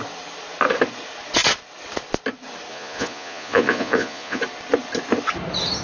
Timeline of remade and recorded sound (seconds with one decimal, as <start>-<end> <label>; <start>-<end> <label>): 0.0-2.7 recorded; 2.7-4.4 remade; 4.4-5.8 recorded